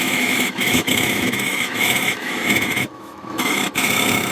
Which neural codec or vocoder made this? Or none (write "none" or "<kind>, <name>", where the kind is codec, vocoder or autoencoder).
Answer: autoencoder, DAC-VAE